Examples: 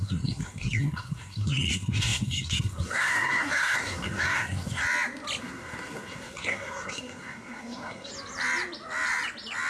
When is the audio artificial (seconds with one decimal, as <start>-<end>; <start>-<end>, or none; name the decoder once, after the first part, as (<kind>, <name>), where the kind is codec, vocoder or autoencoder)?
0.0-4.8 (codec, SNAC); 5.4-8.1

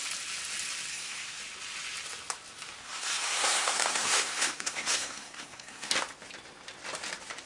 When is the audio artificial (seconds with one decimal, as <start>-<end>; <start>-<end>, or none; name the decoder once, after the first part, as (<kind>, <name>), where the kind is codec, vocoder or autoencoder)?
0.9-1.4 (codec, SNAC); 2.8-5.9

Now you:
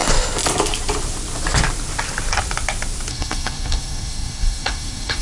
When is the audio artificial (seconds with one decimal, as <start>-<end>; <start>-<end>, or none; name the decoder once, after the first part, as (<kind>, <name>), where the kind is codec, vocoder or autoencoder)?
3.1-5.2 (codec, SNAC)